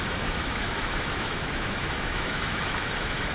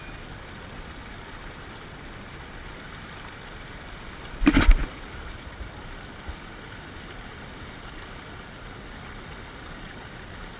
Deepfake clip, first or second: first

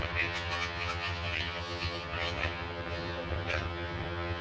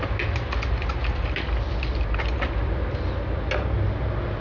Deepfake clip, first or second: first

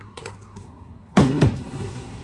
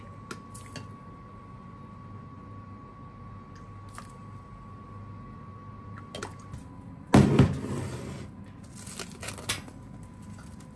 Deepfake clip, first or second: first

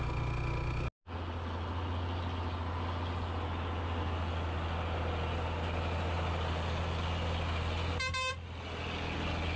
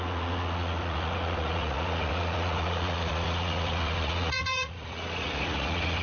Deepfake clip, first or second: second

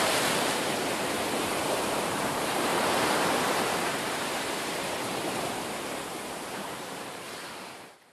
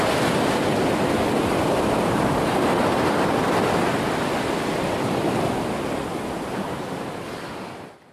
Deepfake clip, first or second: first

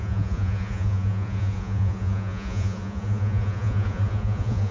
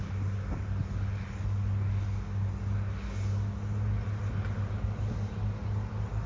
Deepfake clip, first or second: first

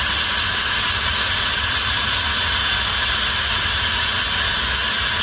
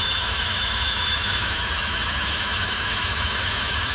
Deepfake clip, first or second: second